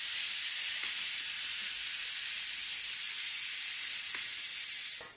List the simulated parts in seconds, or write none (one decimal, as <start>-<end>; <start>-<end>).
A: none